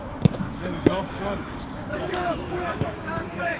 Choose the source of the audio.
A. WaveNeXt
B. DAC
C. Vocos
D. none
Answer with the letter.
B